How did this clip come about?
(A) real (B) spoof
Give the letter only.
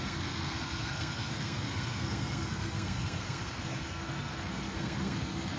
B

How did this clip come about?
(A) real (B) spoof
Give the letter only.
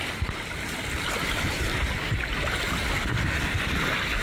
A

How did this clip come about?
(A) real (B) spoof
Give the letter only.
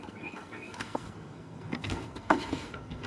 B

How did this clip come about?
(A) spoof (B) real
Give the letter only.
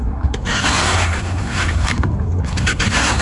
A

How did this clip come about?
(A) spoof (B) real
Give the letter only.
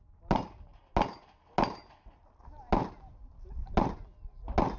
B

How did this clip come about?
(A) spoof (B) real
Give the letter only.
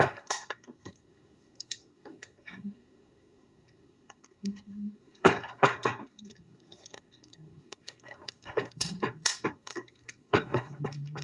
A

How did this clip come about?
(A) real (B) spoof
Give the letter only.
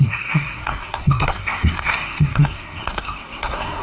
B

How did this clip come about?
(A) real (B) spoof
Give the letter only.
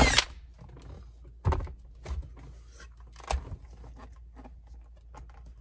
A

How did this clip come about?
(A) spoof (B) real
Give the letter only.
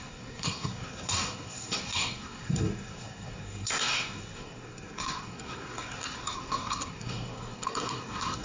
A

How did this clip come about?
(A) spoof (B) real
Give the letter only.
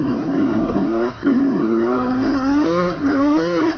A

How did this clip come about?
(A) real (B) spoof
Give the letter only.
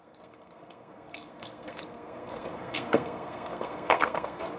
B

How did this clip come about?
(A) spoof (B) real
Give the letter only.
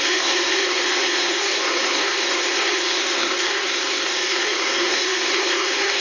A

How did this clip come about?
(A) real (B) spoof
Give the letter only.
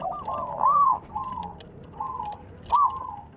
A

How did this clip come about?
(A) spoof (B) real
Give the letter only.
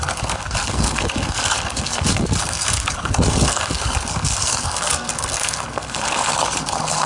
A